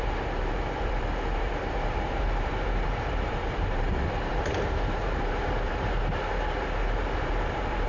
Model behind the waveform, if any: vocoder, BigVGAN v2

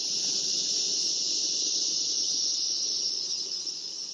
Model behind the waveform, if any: none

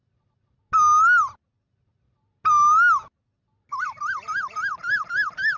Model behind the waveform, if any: none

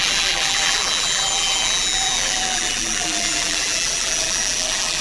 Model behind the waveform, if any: vocoder, BigVGAN v2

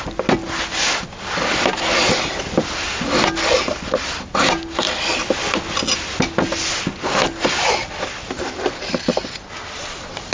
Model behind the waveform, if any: none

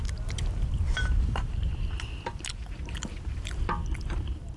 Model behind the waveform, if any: none